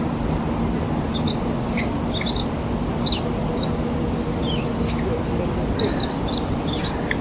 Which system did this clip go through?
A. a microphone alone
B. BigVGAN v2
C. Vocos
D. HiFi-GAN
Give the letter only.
A